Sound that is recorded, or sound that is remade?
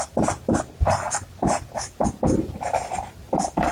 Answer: recorded